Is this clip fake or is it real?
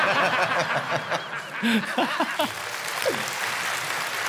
real